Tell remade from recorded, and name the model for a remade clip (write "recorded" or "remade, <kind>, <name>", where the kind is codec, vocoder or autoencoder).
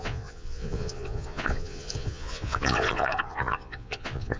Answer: remade, vocoder, Vocos